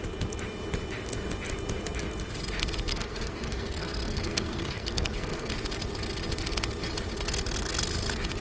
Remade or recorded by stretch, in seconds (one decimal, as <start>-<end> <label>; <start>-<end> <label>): 0.0-2.9 recorded; 2.9-5.5 remade; 5.5-8.4 recorded